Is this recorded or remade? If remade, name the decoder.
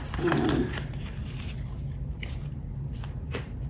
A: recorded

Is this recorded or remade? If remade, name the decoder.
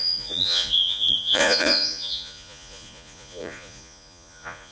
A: remade, vocoder, Vocos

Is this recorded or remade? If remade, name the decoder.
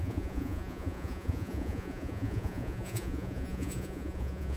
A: remade, vocoder, Vocos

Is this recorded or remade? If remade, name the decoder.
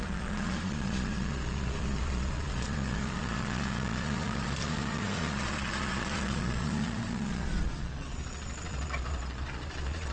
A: remade, vocoder, Vocos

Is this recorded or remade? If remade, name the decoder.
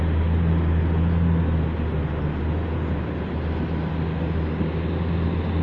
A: recorded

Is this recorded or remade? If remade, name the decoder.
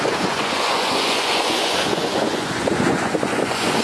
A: remade, vocoder, Vocos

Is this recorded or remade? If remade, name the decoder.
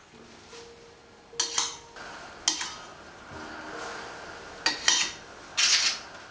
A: recorded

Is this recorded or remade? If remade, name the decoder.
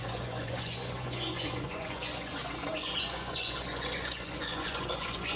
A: remade, vocoder, Vocos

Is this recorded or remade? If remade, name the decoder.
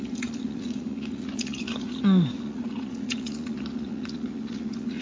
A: remade, vocoder, Vocos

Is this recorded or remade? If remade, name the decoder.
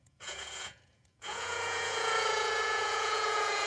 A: remade, vocoder, Vocos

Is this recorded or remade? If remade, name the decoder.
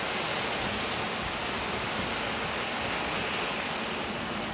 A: recorded